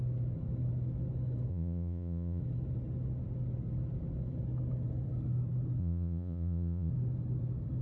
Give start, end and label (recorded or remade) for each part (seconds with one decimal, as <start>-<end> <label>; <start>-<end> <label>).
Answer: 0.0-1.5 recorded; 1.5-2.4 remade; 2.4-5.8 recorded; 5.8-6.9 remade; 6.9-7.8 recorded